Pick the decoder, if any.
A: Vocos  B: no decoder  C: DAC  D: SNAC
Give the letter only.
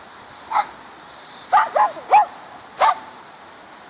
B